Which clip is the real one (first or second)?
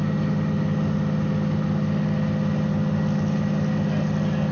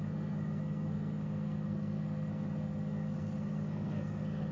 first